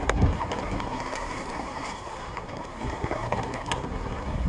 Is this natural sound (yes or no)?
no